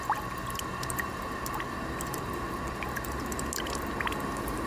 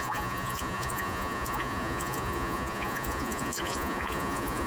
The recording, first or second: first